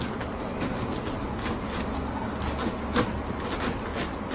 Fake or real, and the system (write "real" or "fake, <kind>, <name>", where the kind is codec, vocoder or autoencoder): real